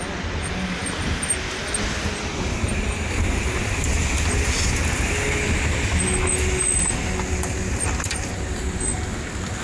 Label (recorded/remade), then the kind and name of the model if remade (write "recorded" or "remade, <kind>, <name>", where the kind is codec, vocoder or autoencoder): recorded